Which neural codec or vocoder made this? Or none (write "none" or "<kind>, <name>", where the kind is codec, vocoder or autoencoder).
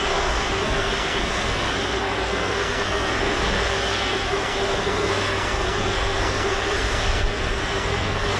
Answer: codec, SNAC